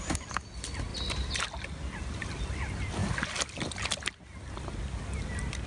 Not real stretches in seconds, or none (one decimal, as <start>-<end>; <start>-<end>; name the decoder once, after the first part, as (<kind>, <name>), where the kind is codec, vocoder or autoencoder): none